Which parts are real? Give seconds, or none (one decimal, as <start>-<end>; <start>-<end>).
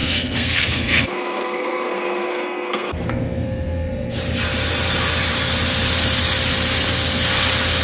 4.2-7.8